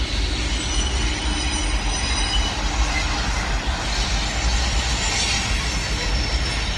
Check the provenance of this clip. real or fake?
real